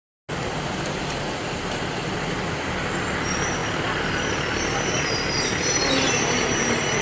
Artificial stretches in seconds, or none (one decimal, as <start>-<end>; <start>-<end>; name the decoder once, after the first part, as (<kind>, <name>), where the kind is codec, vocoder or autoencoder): none